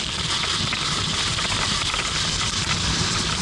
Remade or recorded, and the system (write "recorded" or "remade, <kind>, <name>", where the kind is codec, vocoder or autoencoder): recorded